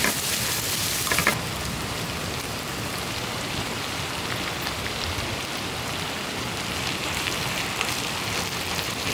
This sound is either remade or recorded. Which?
recorded